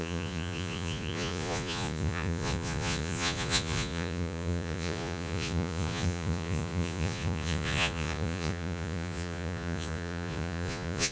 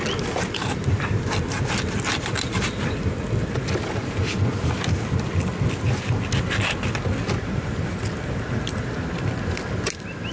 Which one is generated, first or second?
first